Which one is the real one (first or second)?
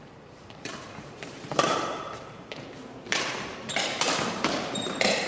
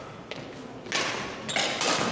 second